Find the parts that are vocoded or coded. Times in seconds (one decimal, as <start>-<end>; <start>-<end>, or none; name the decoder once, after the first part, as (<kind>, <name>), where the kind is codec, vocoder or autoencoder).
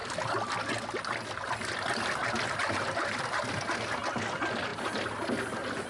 none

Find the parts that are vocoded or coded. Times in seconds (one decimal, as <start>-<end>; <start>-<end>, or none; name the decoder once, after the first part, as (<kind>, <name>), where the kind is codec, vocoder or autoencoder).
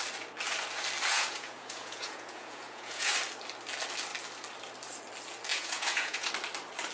1.1-3.1 (vocoder, Vocos); 5.5-6.3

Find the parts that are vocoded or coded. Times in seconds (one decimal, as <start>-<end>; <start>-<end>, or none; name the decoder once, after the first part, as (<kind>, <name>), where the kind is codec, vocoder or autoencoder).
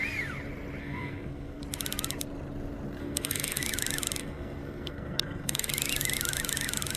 0.8-1.6 (codec, SNAC); 3.0-3.6; 4.2-5.7